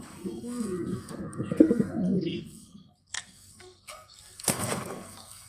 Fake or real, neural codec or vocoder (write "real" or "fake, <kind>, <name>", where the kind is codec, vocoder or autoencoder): fake, codec, SNAC